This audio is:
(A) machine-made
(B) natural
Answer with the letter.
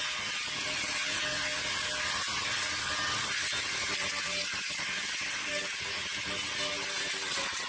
B